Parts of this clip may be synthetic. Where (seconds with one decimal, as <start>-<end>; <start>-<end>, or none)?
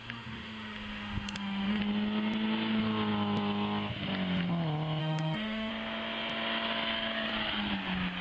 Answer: 0.0-1.8; 5.0-5.7